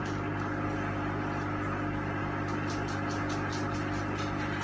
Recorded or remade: recorded